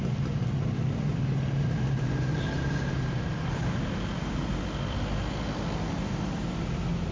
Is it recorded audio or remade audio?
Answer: recorded